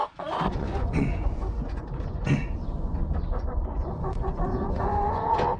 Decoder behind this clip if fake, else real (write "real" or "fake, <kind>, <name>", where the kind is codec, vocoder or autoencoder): fake, vocoder, Vocos